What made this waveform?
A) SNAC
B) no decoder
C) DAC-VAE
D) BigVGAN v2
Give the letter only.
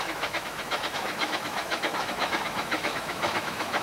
C